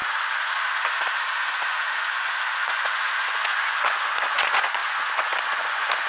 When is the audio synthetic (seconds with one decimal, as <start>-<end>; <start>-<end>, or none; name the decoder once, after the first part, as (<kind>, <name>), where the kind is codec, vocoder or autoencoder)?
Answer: 1.3-6.1 (vocoder, Vocos)

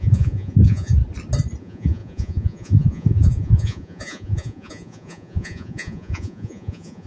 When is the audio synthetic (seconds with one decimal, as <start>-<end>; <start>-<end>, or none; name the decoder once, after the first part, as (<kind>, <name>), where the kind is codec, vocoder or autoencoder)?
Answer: 0.0-1.0 (vocoder, Vocos); 1.6-7.1

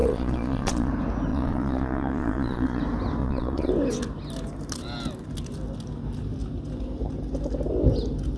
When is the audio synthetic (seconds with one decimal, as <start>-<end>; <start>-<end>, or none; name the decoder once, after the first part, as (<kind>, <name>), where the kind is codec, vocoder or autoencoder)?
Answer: 0.0-0.9 (vocoder, Vocos); 1.3-2.8; 3.2-3.7

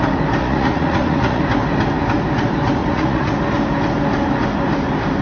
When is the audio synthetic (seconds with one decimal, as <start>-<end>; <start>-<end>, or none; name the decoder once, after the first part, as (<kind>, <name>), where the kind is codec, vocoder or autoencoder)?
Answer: 0.4-1.4 (vocoder, Vocos); 2.8-3.3

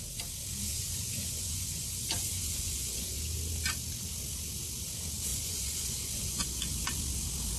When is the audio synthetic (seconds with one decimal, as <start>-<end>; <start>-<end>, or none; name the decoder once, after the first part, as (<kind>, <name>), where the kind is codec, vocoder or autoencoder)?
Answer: 0.7-3.2 (vocoder, Vocos); 5.3-6.5

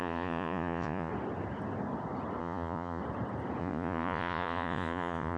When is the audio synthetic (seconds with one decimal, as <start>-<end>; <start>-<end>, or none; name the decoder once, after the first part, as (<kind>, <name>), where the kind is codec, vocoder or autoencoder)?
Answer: 0.0-1.1 (vocoder, Vocos); 2.4-3.0; 3.6-5.4